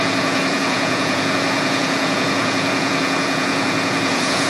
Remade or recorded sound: remade